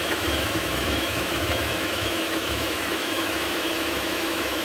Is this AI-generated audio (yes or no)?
yes